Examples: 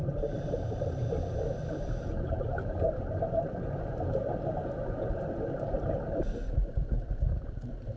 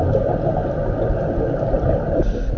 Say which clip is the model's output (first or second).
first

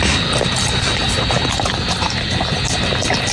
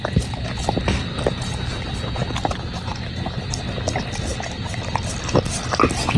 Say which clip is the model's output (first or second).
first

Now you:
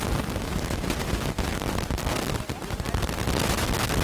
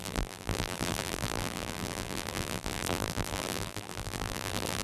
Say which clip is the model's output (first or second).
second